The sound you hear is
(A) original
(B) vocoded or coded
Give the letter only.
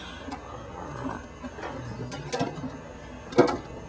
A